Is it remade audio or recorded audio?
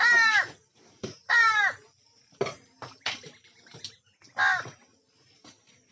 recorded